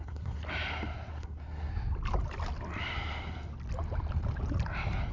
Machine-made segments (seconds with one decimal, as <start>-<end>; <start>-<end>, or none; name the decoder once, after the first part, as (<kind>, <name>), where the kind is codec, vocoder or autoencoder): 0.0-0.4 (codec, SNAC); 1.1-1.7